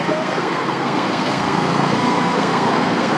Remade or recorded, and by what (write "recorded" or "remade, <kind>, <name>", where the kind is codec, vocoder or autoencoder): remade, codec, SNAC